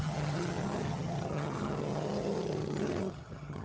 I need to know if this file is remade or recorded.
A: remade